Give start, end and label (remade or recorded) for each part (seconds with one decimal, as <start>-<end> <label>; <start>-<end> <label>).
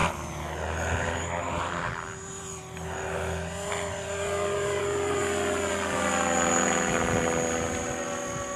0.0-8.6 recorded